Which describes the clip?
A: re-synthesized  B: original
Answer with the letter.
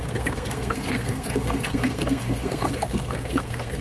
A